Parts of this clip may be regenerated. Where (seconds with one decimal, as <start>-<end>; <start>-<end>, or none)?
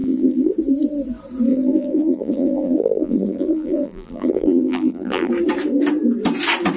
0.0-0.5; 1.5-5.3